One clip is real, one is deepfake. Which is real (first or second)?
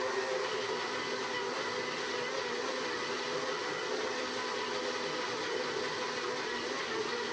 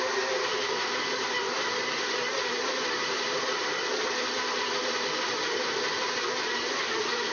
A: first